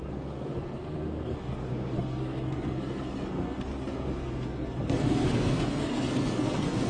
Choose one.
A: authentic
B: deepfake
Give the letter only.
B